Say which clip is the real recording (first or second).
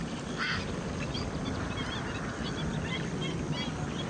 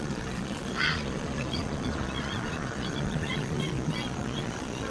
first